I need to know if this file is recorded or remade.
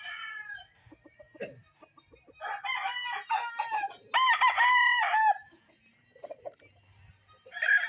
recorded